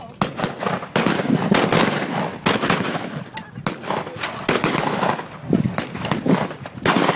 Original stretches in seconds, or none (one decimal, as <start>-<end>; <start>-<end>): 0.0-7.2